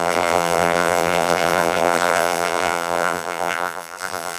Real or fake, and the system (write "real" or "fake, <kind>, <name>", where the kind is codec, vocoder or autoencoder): fake, vocoder, BigVGAN v2